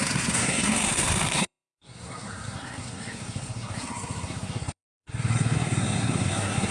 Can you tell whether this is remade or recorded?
remade